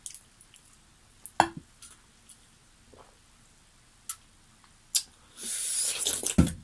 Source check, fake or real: real